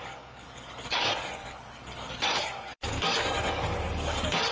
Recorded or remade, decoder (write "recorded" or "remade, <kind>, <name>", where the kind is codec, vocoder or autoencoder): remade, codec, DAC